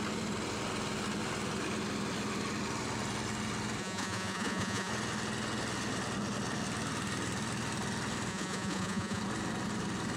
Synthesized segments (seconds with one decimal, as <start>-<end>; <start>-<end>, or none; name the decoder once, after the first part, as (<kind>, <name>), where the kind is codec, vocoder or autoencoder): 3.8-4.9 (vocoder, Vocos); 8.3-9.2